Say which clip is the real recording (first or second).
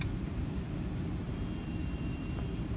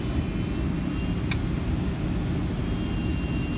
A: second